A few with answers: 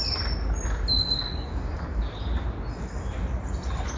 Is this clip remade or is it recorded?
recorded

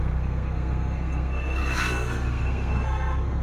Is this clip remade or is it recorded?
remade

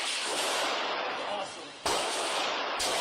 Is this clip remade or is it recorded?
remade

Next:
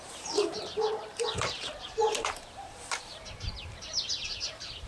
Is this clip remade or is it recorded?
remade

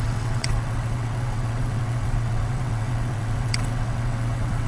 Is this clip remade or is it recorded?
remade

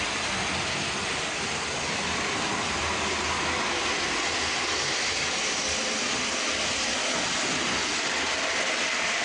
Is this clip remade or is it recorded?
recorded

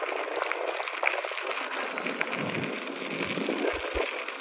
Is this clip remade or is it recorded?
recorded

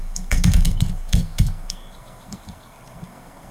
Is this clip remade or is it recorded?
remade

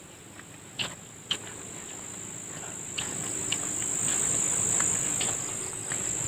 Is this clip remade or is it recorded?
remade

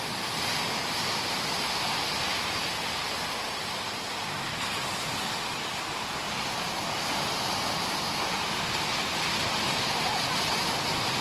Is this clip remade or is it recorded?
recorded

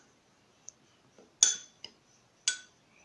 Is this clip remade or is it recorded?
recorded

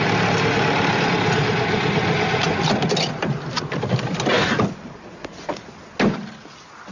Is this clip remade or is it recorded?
recorded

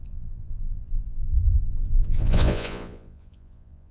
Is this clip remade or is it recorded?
remade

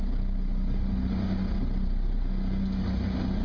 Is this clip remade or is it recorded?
recorded